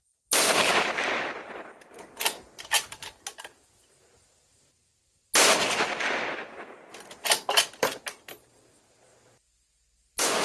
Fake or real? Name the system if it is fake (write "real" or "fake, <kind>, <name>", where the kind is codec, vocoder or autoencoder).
real